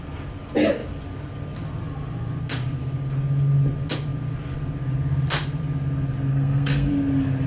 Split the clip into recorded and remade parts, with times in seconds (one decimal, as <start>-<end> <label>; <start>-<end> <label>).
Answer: 0.0-6.3 recorded; 6.3-6.9 remade; 6.9-7.5 recorded